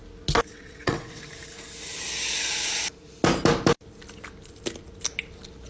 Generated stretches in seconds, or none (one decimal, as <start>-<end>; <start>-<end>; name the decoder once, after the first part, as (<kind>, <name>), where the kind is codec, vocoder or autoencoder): 0.5-1.2 (vocoder, WaveNeXt)